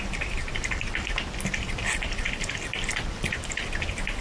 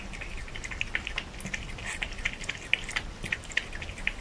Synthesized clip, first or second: first